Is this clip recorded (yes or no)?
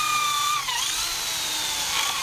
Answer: no